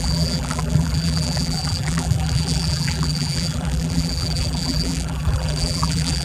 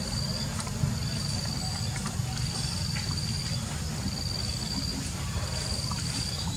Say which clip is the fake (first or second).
first